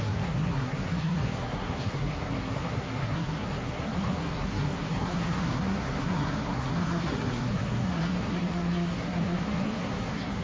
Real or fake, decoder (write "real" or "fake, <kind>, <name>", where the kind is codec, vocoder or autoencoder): fake, codec, SNAC